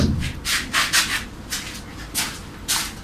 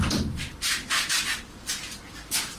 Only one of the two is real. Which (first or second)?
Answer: first